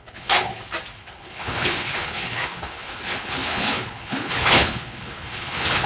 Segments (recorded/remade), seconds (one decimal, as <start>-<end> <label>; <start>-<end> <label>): 0.0-0.5 remade; 0.5-1.0 recorded; 1.0-5.9 remade

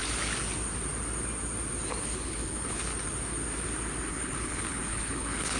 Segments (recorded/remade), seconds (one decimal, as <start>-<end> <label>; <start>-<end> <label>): 0.0-2.0 recorded; 2.0-2.9 remade; 2.9-4.1 recorded; 4.1-5.6 remade